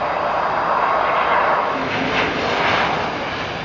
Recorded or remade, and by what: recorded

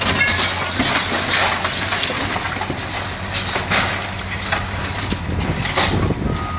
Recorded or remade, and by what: recorded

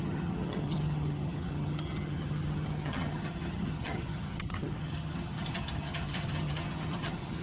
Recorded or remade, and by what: remade, vocoder, HiFi-GAN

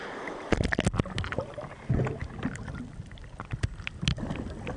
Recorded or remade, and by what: recorded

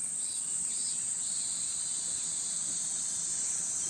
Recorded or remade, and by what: recorded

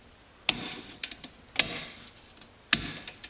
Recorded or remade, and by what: recorded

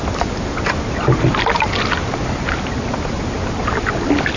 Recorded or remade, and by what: recorded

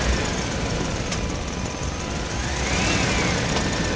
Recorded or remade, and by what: recorded